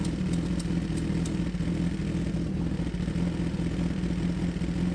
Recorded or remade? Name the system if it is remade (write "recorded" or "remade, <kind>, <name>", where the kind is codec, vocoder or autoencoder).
recorded